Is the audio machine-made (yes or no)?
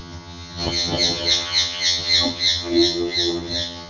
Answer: yes